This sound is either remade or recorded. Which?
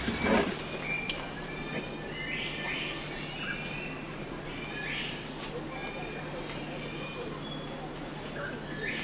recorded